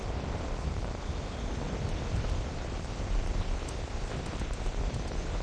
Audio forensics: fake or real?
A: fake